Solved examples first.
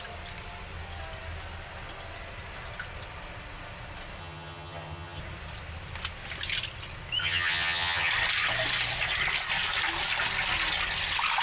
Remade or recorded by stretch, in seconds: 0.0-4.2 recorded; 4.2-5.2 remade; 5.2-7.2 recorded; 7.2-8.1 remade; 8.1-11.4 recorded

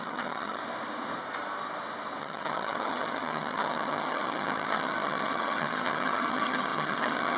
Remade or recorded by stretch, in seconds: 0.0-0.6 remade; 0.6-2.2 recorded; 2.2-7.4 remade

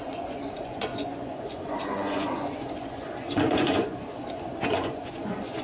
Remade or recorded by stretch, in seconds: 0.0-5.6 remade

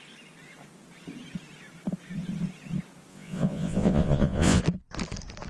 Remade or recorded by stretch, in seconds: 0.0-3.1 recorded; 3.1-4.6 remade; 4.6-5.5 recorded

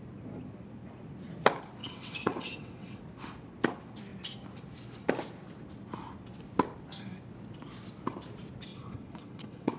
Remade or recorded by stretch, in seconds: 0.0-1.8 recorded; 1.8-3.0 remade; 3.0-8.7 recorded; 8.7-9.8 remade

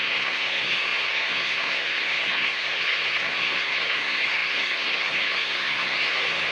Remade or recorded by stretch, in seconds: 0.0-6.5 remade

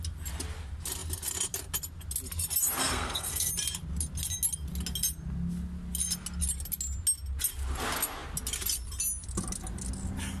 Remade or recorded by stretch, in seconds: 0.0-2.8 recorded; 2.8-3.5 remade; 3.5-10.4 recorded

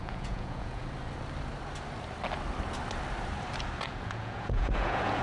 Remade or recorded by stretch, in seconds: 0.0-0.8 remade; 0.8-3.9 recorded; 3.9-5.2 remade